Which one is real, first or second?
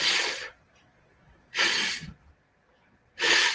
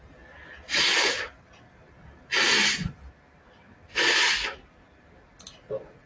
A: second